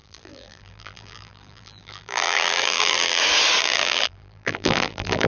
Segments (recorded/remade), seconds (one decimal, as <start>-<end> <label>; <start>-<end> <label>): 0.0-3.2 remade; 3.2-3.6 recorded; 3.6-5.3 remade